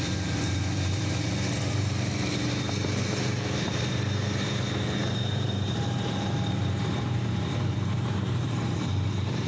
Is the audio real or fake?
fake